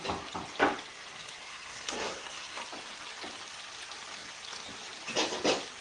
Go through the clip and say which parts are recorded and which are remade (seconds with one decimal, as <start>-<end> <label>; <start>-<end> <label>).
0.0-1.4 recorded; 1.4-2.6 remade; 2.6-5.8 recorded